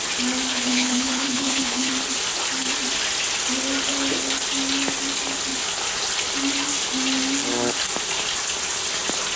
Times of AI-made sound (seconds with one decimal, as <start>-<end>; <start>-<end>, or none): 0.5-1.9